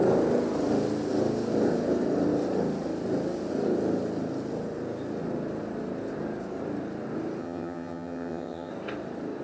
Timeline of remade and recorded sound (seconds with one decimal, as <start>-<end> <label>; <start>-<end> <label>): 0.0-7.4 recorded; 7.4-8.7 remade; 8.7-9.4 recorded